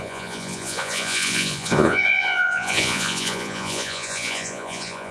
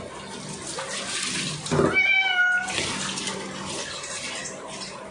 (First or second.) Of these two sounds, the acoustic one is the second